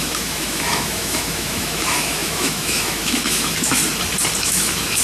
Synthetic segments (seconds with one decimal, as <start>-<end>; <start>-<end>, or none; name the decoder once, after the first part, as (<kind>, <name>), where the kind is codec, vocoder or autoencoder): 0.0-3.8 (autoencoder, DAC-VAE); 4.4-5.0